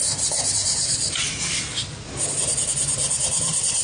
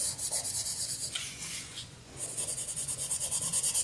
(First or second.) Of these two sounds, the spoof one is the second